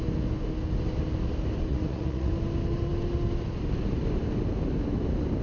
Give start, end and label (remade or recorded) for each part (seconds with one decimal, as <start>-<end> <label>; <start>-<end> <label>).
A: 0.0-1.7 recorded; 1.7-2.3 remade; 2.3-5.4 recorded